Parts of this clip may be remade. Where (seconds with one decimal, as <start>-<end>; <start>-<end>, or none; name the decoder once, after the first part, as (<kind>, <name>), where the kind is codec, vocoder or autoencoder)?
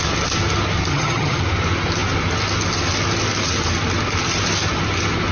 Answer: 0.9-1.4 (vocoder, HiFi-GAN)